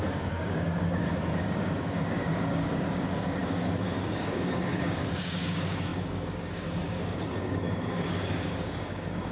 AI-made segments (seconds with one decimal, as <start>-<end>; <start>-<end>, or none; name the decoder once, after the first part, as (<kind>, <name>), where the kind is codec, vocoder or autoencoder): 0.0-9.3 (codec, DAC)